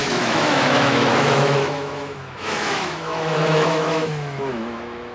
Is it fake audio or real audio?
fake